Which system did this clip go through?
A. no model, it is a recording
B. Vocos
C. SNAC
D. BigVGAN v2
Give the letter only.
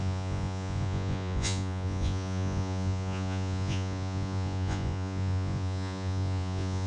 B